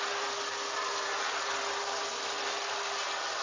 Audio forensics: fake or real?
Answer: real